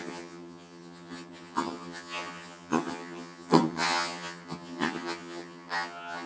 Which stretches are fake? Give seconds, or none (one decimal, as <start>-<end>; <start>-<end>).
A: 0.0-6.3